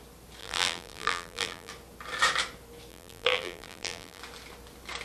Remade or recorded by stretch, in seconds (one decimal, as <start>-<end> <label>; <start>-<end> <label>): 0.0-0.4 recorded; 0.4-1.7 remade; 1.7-2.9 recorded; 2.9-4.2 remade; 4.2-5.0 recorded

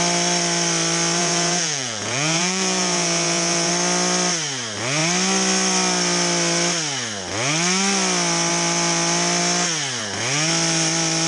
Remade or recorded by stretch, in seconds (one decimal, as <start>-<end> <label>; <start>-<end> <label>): 0.0-1.2 recorded; 1.2-3.7 remade; 3.7-11.3 recorded

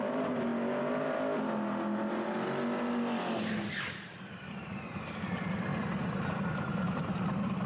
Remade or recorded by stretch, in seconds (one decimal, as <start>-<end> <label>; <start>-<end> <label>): 0.0-0.5 remade; 0.5-3.7 recorded; 3.7-5.7 remade; 5.7-6.3 recorded; 6.3-7.7 remade

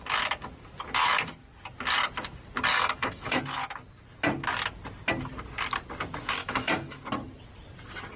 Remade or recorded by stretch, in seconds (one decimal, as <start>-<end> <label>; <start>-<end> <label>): 0.0-2.7 recorded; 2.7-3.4 remade; 3.4-6.4 recorded; 6.4-7.0 remade; 7.0-8.2 recorded

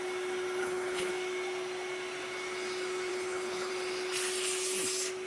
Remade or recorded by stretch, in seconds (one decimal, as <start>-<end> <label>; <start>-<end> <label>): 0.0-0.6 recorded; 0.6-1.1 remade; 1.1-3.1 recorded; 3.1-3.7 remade; 3.7-5.3 recorded

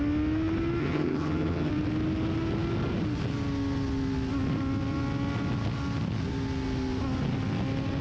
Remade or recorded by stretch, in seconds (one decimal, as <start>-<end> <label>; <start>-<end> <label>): 0.0-0.8 recorded; 0.8-1.7 remade; 1.7-8.0 recorded

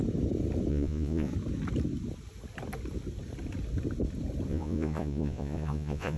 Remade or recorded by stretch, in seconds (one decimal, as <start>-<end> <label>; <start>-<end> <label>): 0.0-0.7 recorded; 0.7-1.3 remade; 1.3-4.5 recorded; 4.5-6.2 remade

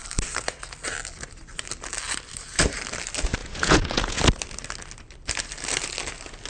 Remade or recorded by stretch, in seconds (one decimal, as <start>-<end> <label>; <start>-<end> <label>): 0.0-3.4 recorded; 3.4-4.2 remade; 4.2-6.5 recorded